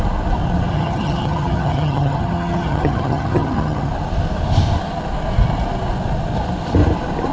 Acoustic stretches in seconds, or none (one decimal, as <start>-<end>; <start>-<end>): 0.0-0.7; 3.9-7.3